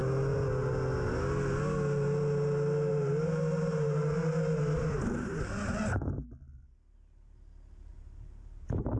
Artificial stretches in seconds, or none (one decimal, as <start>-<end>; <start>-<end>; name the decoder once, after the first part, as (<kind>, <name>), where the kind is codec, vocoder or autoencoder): 2.9-4.3 (vocoder, BigVGAN v2); 7.9-9.0